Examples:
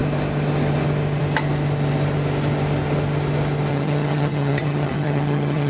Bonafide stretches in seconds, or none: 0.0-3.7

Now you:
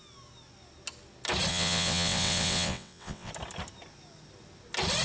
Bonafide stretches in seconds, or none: 0.0-1.5; 3.3-5.0